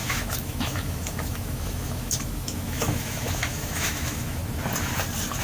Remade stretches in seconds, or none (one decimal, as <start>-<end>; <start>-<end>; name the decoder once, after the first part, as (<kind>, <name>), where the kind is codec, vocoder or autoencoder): 0.0-4.4 (autoencoder, DAC-VAE)